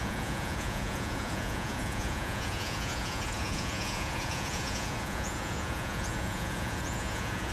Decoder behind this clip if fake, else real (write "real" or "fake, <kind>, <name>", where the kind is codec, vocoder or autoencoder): fake, vocoder, Vocos